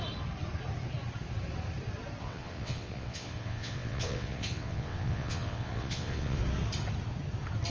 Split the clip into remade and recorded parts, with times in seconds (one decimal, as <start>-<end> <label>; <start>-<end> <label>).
0.0-2.2 recorded; 2.2-6.4 remade; 6.4-7.7 recorded